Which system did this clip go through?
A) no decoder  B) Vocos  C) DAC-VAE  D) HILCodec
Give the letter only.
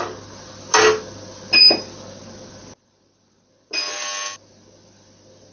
A